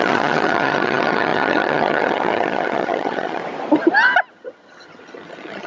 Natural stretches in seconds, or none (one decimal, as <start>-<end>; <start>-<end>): 3.4-4.3